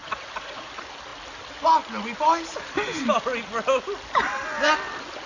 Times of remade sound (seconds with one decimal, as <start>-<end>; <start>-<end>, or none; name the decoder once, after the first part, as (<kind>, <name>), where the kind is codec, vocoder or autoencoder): 0.0-0.7 (vocoder, Vocos)